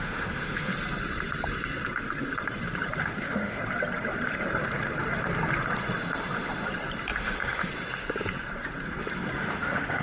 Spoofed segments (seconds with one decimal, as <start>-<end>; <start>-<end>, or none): 0.0-0.7; 3.0-3.6; 7.2-7.7; 9.4-10.0